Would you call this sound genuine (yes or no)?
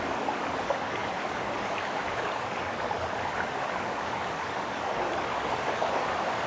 no